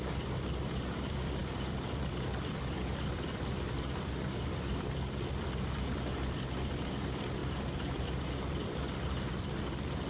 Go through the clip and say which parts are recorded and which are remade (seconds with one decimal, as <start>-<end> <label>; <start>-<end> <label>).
0.0-10.1 remade